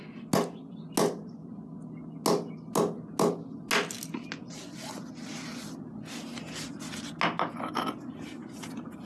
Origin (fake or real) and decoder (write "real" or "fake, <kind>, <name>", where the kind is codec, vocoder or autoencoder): real